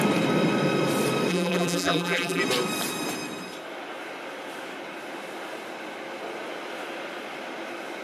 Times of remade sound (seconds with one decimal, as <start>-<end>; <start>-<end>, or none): 1.3-2.4